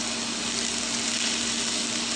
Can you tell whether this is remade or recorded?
recorded